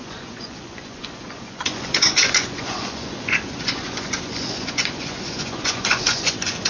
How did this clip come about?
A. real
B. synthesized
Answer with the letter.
B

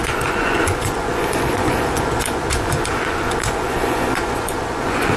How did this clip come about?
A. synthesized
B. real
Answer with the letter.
A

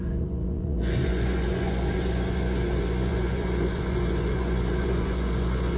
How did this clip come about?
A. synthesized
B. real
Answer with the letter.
A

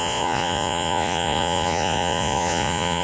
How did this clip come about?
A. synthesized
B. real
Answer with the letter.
A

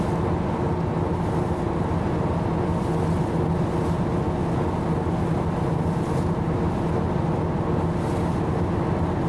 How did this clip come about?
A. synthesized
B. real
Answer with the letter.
B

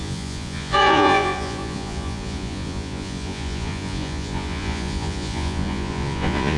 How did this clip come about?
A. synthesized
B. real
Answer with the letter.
A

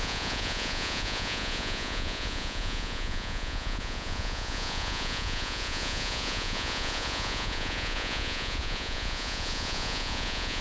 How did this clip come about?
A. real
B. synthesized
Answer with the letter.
B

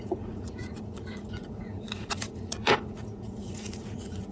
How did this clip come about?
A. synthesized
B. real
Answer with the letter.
A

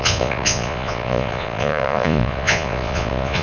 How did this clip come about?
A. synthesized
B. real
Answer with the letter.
A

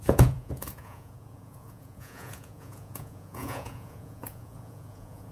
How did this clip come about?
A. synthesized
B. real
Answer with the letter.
A